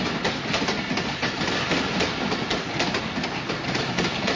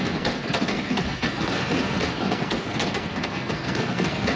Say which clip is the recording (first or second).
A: first